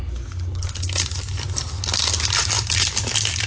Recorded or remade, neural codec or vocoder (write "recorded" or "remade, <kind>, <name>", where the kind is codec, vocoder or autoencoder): recorded